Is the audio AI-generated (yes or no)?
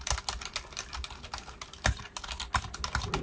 no